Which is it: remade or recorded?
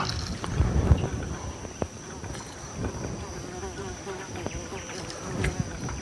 recorded